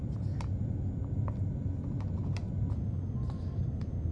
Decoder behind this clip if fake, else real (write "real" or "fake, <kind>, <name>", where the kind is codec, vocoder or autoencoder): real